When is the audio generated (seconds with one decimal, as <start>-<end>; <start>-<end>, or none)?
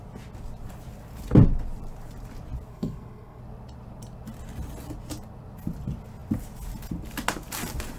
2.7-3.4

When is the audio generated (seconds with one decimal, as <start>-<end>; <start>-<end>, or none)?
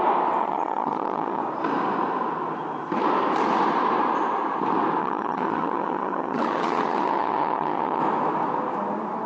0.4-1.4; 5.0-8.0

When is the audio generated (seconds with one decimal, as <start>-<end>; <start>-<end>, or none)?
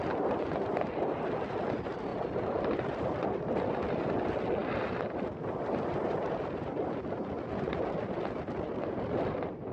none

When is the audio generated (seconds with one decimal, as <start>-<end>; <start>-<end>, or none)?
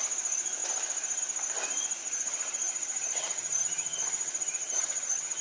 2.0-5.4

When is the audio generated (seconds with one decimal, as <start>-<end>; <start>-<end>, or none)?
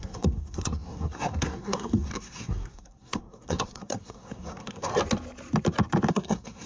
0.0-4.9; 6.1-6.7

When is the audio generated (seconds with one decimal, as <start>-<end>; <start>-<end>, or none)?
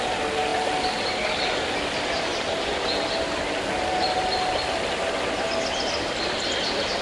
none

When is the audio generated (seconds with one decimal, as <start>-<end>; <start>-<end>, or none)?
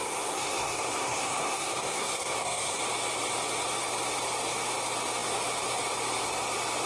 0.0-2.8